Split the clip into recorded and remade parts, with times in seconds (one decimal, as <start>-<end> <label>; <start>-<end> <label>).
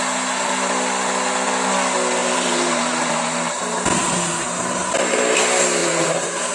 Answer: 0.0-2.2 recorded; 2.2-4.3 remade; 4.3-5.8 recorded; 5.8-6.5 remade